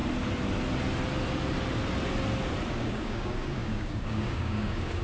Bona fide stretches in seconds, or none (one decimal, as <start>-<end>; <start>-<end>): 0.0-2.7